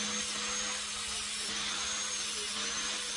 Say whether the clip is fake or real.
real